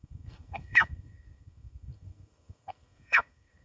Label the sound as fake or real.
fake